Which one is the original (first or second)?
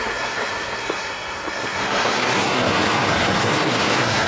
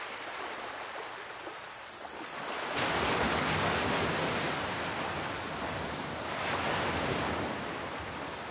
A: second